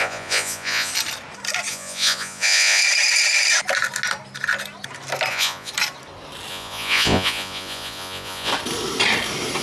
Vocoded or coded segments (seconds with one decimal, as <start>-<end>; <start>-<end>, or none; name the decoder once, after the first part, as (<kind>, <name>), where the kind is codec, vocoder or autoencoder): 0.0-0.9 (vocoder, Vocos); 1.7-2.8; 5.3-5.7; 6.5-8.5